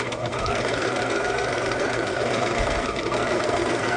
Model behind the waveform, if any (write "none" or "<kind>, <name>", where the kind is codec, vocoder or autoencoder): codec, SNAC